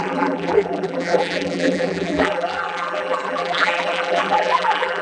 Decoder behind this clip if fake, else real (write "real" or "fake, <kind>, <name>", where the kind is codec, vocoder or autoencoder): fake, vocoder, BigVGAN v2